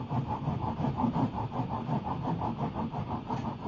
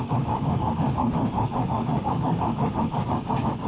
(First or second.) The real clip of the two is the first